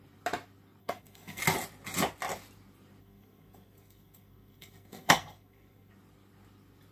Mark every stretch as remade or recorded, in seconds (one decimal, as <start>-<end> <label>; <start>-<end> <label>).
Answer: 0.0-0.8 recorded; 0.8-1.4 remade; 1.4-3.0 recorded; 3.0-5.9 remade; 5.9-6.9 recorded